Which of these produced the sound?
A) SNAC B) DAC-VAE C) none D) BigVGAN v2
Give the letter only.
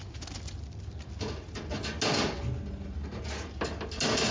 C